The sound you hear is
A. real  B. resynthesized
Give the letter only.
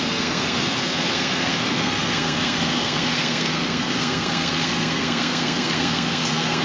B